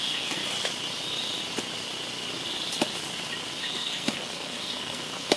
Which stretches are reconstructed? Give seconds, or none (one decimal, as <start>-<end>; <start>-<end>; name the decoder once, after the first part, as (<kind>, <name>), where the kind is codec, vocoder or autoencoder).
0.0-0.4 (codec, SNAC); 3.6-5.4